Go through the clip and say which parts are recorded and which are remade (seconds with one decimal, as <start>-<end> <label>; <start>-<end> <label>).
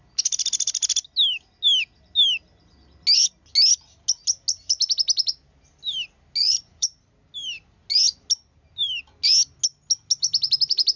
0.0-6.4 recorded; 6.4-7.1 remade; 7.1-11.0 recorded